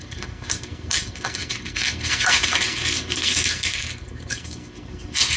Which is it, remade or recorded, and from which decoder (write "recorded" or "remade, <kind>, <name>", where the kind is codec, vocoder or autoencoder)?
remade, codec, SNAC